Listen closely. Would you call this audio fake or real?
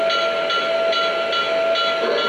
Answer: real